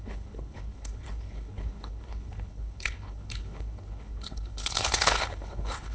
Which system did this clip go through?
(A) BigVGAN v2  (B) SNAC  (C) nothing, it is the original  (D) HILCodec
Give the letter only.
D